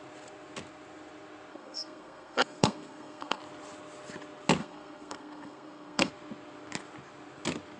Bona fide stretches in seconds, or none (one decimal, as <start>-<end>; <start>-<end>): 0.0-1.5; 3.4-4.6; 6.1-7.8